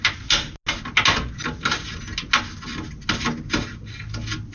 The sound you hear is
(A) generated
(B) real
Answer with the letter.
B